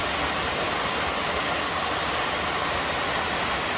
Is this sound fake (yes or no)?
no